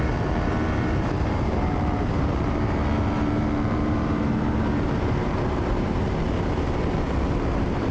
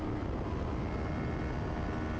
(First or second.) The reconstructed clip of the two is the first